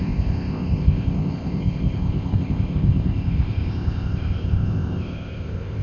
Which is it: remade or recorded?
remade